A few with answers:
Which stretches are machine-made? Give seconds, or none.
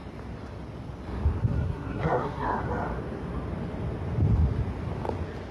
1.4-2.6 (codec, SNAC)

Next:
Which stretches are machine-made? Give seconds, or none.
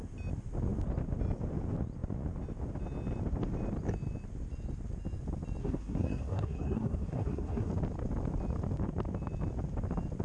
5.6-7.7 (codec, SNAC)